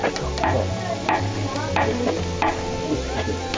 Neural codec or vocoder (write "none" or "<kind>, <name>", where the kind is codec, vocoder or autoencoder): none